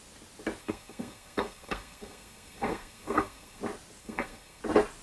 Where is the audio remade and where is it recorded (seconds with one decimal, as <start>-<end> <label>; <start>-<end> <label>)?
0.0-0.6 recorded; 0.6-3.6 remade; 3.6-4.0 recorded; 4.0-4.6 remade; 4.6-5.0 recorded